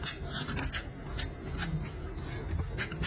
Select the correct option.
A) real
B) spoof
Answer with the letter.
A